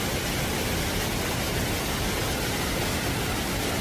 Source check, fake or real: real